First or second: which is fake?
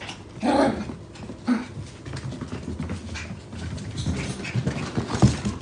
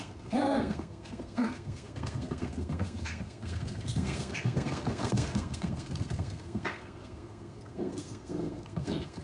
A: second